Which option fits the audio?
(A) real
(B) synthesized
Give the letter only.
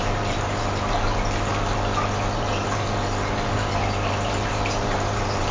B